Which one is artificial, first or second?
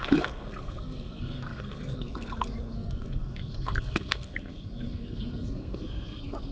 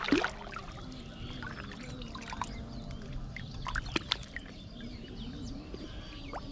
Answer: first